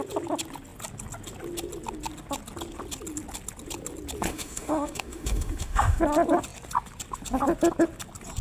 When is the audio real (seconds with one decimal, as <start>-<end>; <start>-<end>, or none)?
0.0-4.3; 6.0-8.4